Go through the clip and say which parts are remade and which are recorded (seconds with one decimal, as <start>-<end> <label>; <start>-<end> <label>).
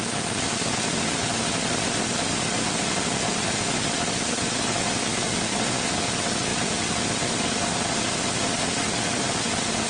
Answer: 0.0-9.9 recorded